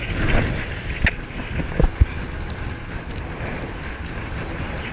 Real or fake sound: real